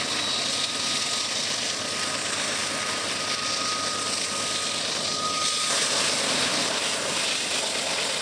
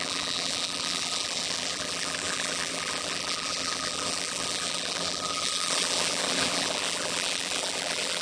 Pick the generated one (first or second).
second